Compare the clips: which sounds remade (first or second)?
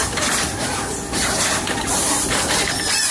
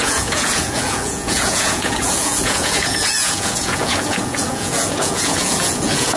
second